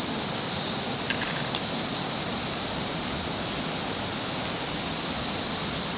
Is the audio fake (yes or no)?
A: no